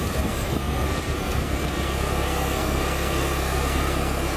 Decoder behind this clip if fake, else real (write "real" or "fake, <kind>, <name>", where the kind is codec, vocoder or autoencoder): fake, codec, SNAC